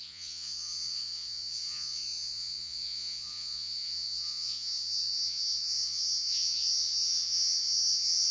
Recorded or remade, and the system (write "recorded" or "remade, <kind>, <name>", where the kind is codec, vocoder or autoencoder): remade, vocoder, Vocos